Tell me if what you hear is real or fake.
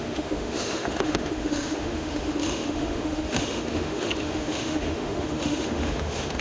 fake